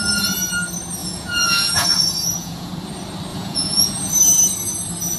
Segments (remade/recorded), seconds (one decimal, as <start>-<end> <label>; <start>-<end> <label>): 0.0-1.0 recorded; 1.0-2.7 remade; 2.7-3.3 recorded; 3.3-4.1 remade; 4.1-5.2 recorded